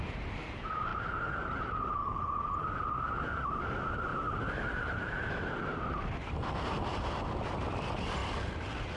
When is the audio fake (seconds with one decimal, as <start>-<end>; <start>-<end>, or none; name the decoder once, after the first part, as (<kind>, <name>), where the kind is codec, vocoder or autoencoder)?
4.1-5.8 (vocoder, BigVGAN v2)